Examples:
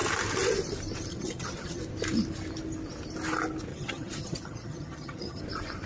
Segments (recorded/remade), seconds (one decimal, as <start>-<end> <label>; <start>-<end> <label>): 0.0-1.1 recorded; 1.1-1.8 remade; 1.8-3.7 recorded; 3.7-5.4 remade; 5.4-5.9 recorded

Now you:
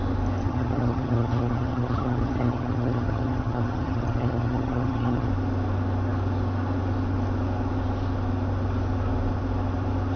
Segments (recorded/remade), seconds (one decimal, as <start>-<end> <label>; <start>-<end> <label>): 0.0-0.4 recorded; 0.4-5.3 remade; 5.3-10.2 recorded

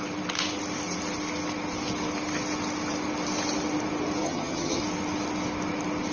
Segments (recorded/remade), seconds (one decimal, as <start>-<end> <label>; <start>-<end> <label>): 0.0-4.2 recorded; 4.2-4.8 remade; 4.8-6.1 recorded

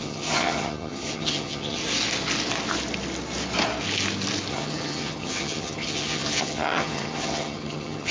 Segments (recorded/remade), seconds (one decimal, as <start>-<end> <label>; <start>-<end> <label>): 0.0-1.8 remade; 1.8-4.5 recorded; 4.5-8.1 remade

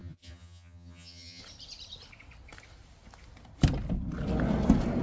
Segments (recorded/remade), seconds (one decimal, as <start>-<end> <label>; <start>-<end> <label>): 0.0-1.4 remade; 1.4-5.0 recorded